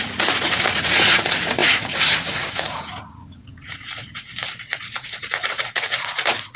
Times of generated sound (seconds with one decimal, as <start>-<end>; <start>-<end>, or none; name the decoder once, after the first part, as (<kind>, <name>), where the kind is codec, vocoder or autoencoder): 0.0-6.6 (vocoder, Vocos)